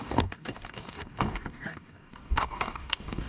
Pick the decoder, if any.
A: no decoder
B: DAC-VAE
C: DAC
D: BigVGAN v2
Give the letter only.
C